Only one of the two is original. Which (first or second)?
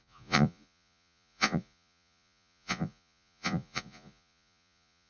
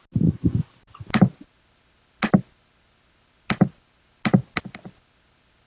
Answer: second